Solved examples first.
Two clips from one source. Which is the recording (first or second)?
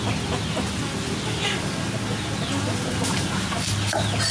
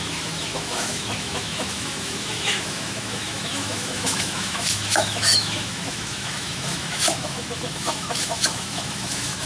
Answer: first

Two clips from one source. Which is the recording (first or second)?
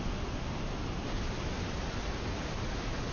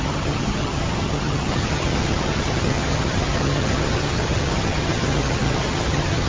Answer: first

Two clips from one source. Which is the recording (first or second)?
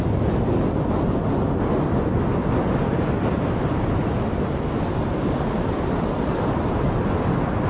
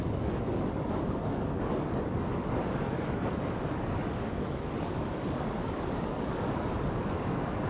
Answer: first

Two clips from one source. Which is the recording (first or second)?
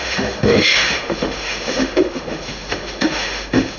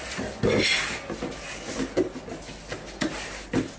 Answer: second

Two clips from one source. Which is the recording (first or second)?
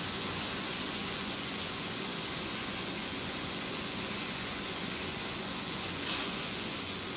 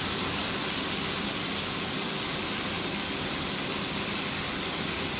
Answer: second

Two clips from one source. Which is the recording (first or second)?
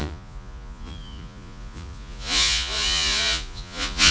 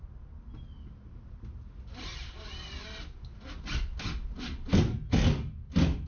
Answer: second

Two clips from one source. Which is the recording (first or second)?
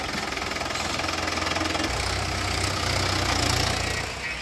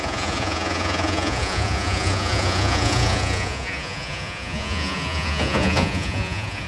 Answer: first